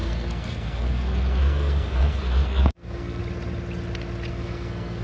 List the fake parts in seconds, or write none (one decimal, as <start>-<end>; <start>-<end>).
0.0-3.2; 4.3-5.0